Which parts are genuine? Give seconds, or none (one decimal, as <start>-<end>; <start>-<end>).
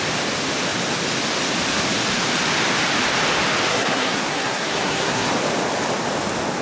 0.0-3.7; 5.3-6.6